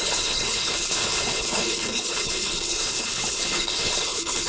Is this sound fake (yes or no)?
yes